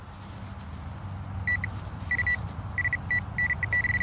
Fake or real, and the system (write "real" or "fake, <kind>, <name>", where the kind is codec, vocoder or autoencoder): real